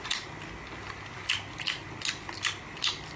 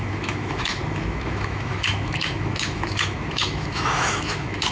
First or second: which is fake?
second